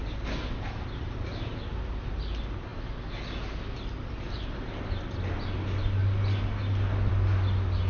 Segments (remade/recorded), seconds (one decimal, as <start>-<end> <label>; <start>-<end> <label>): 0.0-7.9 recorded